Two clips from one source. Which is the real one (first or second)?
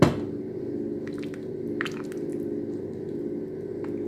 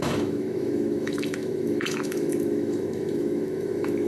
first